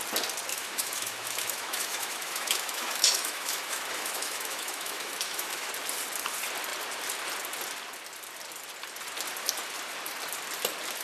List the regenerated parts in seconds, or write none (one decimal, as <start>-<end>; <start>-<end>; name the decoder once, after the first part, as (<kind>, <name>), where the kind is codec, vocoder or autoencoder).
0.5-5.7 (autoencoder, DAC-VAE)